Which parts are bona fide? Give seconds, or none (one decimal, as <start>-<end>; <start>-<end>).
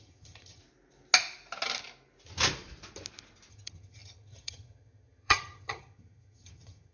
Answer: 0.6-3.5